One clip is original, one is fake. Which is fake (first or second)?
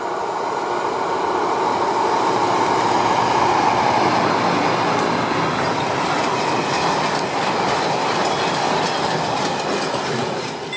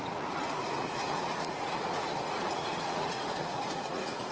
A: second